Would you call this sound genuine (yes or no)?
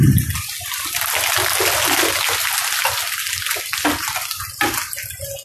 yes